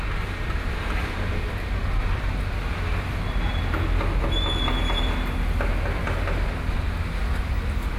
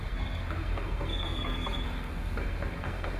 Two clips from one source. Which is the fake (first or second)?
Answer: second